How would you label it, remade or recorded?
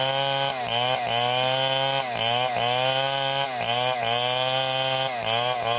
recorded